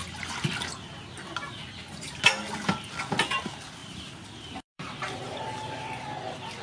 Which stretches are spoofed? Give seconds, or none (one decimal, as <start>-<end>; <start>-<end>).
3.8-6.0